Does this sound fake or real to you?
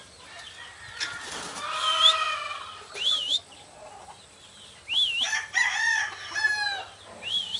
real